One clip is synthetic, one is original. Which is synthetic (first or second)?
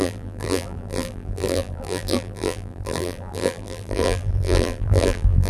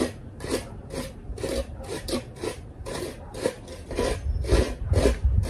first